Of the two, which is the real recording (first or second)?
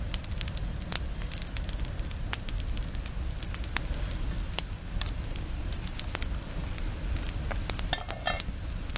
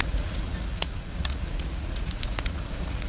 first